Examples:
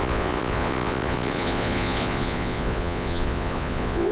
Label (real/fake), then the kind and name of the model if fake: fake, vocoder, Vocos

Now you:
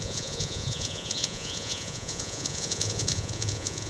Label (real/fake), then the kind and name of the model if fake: fake, vocoder, Vocos